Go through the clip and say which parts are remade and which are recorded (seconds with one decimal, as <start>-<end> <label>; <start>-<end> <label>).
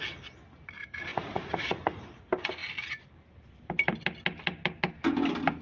0.0-1.1 recorded; 1.1-2.0 remade; 2.0-5.6 recorded